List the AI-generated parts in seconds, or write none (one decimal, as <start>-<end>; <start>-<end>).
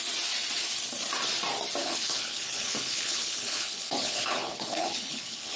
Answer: 1.8-5.6